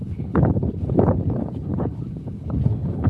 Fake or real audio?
fake